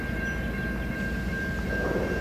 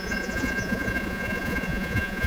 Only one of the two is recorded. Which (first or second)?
first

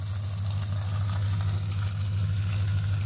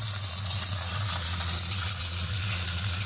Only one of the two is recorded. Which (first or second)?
first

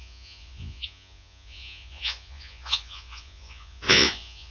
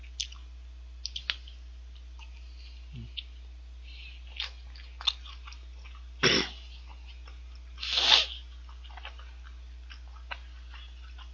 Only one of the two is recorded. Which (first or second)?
second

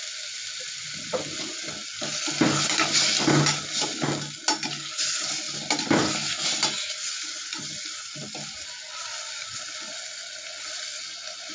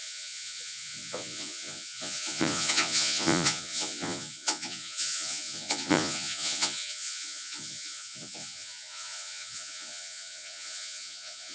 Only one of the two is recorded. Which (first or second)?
first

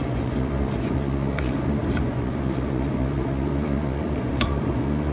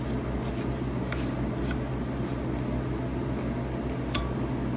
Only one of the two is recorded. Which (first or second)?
second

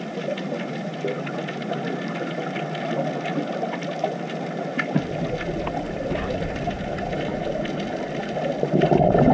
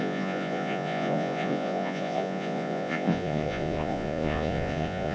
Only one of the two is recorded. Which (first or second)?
first